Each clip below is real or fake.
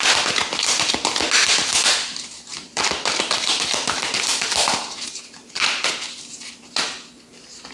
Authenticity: real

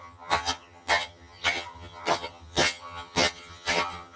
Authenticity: fake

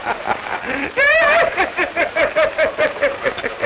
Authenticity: fake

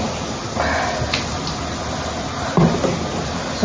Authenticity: real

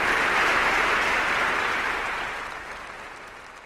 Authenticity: real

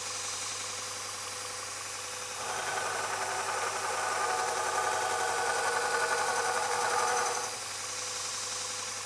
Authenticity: real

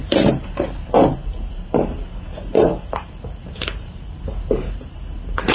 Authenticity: fake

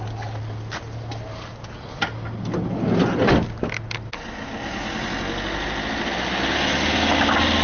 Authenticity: real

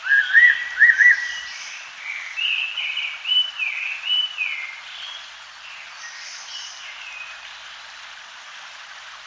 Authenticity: real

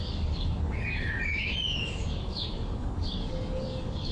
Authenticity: fake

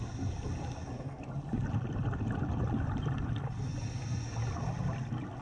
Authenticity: real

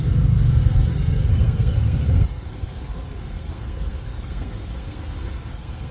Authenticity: fake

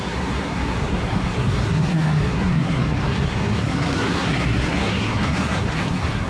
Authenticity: fake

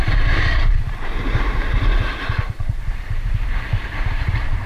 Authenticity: fake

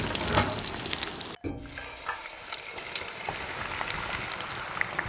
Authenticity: real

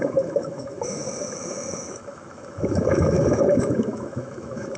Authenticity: fake